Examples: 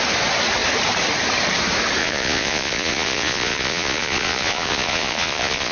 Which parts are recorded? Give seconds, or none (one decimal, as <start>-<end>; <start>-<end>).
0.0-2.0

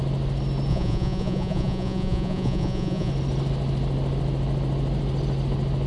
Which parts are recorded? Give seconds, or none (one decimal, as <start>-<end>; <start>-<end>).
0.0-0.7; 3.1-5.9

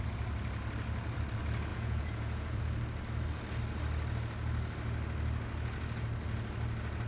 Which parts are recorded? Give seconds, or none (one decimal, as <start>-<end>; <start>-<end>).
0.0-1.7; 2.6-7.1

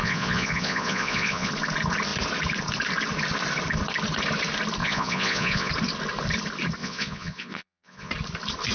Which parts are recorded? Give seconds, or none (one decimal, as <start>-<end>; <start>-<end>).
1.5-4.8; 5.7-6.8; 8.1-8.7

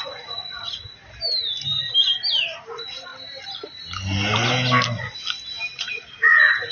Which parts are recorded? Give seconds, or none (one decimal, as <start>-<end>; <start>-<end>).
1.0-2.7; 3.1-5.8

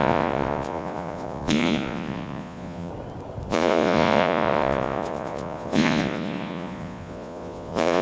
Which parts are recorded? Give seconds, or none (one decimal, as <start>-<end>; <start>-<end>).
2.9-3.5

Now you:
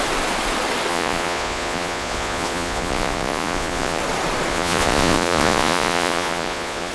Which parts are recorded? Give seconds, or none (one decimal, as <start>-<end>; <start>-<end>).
0.0-0.9; 4.0-4.5

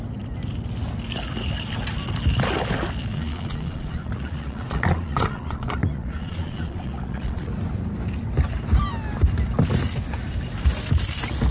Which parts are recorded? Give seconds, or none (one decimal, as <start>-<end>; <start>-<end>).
0.0-3.1; 7.5-11.5